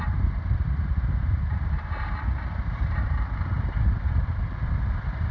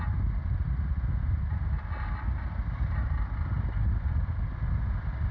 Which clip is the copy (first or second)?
first